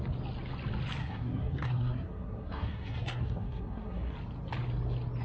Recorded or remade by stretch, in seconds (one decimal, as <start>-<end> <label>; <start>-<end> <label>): 0.0-1.0 recorded; 1.0-4.1 remade; 4.1-5.2 recorded